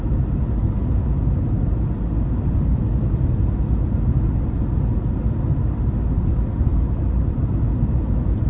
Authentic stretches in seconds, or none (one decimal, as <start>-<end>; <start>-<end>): 0.0-8.5